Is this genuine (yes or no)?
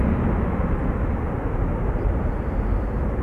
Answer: yes